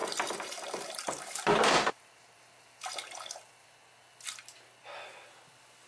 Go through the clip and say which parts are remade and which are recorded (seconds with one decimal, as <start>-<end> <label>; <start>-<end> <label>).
0.0-3.5 remade; 3.5-5.9 recorded